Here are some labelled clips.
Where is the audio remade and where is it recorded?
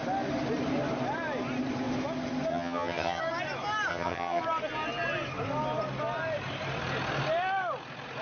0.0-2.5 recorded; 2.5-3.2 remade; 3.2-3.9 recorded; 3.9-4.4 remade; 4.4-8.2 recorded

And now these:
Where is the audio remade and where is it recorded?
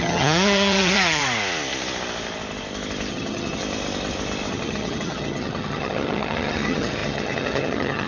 0.0-1.2 remade; 1.2-3.1 recorded; 3.1-3.6 remade; 3.6-4.5 recorded; 4.5-8.1 remade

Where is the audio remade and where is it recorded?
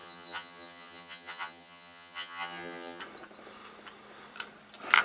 0.0-3.0 remade; 3.0-5.0 recorded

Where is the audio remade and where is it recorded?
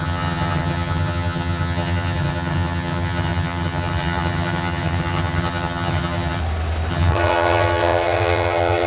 0.0-6.4 remade; 6.4-6.9 recorded; 6.9-8.9 remade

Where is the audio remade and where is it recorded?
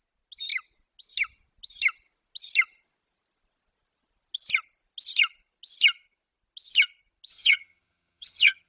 0.0-7.3 recorded; 7.3-8.7 remade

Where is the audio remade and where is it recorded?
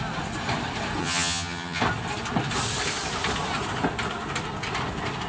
0.0-1.0 recorded; 1.0-1.8 remade; 1.8-5.3 recorded